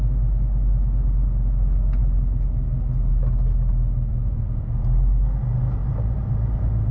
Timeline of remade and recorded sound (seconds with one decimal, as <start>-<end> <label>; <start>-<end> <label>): 0.0-4.1 recorded; 4.1-4.6 remade; 4.6-6.9 recorded